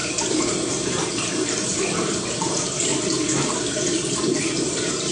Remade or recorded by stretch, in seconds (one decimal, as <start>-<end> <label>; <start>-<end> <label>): 0.0-5.1 remade